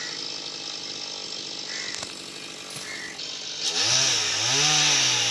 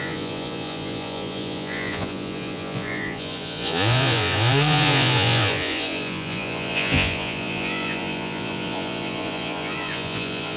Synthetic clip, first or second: second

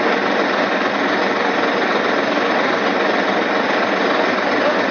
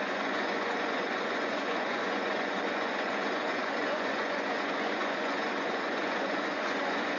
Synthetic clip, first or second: second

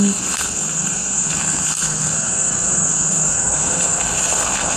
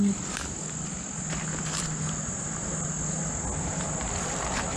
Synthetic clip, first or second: first